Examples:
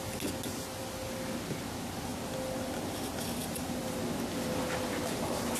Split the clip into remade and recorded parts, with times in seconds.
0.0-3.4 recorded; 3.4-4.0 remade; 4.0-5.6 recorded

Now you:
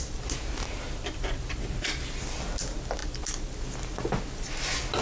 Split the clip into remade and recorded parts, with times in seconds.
0.0-5.0 recorded

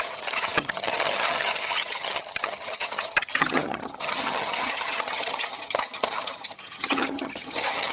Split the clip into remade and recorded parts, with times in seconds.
0.0-7.9 remade

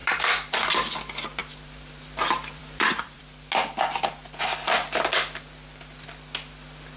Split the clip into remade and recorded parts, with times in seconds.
0.0-0.7 remade; 0.7-1.4 recorded; 1.4-3.2 remade; 3.2-7.0 recorded

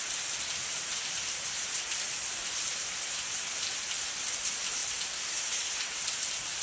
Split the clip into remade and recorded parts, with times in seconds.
0.0-4.8 recorded; 4.8-6.6 remade

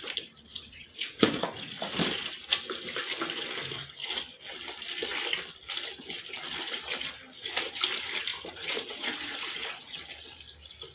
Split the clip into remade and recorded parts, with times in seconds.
0.0-0.5 recorded; 0.5-1.9 remade; 1.9-8.3 recorded; 8.3-9.9 remade; 9.9-10.9 recorded